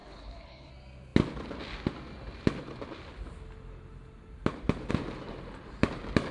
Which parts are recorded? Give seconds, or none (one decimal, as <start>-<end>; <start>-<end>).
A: 0.7-6.3